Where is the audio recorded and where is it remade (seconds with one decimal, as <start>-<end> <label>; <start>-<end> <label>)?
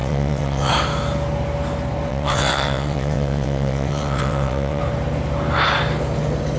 0.0-0.7 remade; 0.7-2.1 recorded; 2.1-4.8 remade; 4.8-6.6 recorded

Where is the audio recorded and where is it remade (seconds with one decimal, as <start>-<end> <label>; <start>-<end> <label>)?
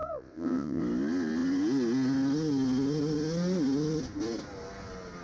0.0-0.8 remade; 0.8-5.2 recorded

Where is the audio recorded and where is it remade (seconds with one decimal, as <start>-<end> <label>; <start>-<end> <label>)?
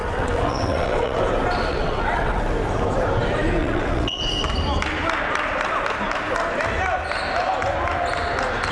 0.0-1.2 remade; 1.2-1.7 recorded; 1.7-2.4 remade; 2.4-3.6 recorded; 3.6-4.3 remade; 4.3-8.7 recorded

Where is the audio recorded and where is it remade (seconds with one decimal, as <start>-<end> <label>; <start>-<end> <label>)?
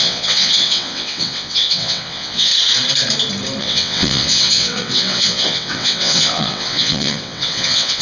0.0-2.5 remade; 2.5-3.6 recorded; 3.6-8.0 remade